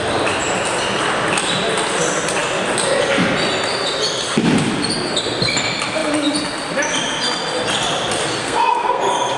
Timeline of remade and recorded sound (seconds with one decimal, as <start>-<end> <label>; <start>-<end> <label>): 0.0-8.4 recorded; 8.4-9.0 remade; 9.0-9.4 recorded